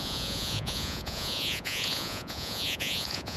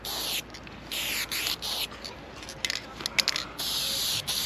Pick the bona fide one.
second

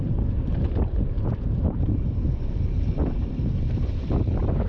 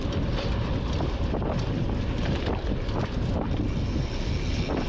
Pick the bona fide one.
second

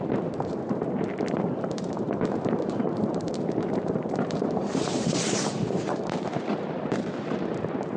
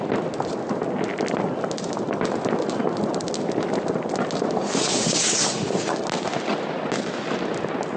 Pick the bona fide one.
second